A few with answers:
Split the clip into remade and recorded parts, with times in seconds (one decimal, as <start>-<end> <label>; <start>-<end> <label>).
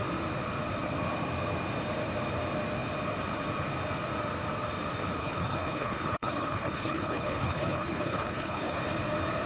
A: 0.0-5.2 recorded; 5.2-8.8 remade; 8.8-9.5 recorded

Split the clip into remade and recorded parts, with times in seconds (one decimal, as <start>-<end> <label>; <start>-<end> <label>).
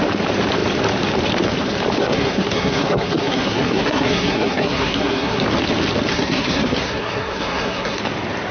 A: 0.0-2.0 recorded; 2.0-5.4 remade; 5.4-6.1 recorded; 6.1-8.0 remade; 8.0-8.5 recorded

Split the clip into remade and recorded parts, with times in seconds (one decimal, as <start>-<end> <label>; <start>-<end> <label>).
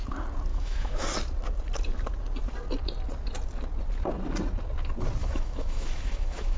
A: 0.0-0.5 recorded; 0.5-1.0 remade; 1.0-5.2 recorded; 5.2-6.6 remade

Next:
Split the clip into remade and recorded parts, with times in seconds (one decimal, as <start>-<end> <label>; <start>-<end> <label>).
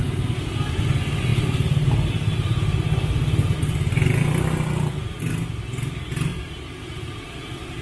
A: 0.0-7.8 recorded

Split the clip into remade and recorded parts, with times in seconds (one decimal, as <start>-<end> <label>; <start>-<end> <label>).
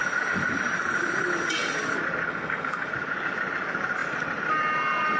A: 0.0-2.3 recorded; 2.3-2.9 remade; 2.9-5.2 recorded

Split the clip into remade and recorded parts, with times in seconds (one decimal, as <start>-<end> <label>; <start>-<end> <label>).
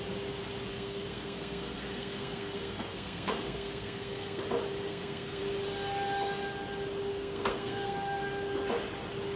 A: 0.0-0.7 recorded; 0.7-4.4 remade; 4.4-4.9 recorded; 4.9-5.4 remade; 5.4-7.1 recorded; 7.1-8.2 remade; 8.2-9.4 recorded